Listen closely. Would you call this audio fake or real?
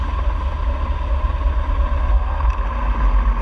real